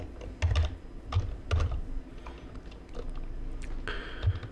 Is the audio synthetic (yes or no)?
no